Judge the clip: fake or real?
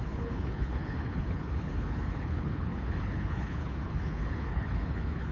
fake